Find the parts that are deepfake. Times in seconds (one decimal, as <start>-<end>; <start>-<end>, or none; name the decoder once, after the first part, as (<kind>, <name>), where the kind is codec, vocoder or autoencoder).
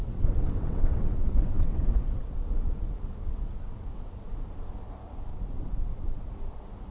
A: 0.0-4.1 (vocoder, WaveNeXt); 5.3-6.3